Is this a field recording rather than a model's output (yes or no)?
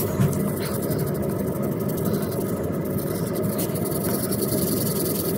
no